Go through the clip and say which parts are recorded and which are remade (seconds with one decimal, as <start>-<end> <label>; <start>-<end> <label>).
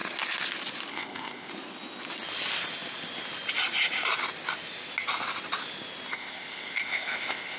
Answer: 0.0-0.9 recorded; 0.9-1.5 remade; 1.5-6.1 recorded; 6.1-7.6 remade